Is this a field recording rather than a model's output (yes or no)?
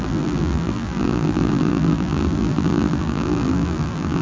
no